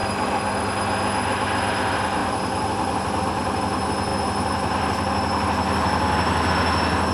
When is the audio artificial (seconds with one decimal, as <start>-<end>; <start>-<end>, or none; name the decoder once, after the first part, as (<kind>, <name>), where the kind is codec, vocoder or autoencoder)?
2.2-3.2 (vocoder, BigVGAN v2)